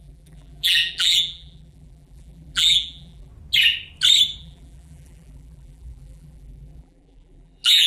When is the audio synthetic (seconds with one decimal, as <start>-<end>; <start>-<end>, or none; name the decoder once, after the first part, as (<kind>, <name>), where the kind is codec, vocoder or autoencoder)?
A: 0.0-3.3 (vocoder, BigVGAN v2); 4.4-7.9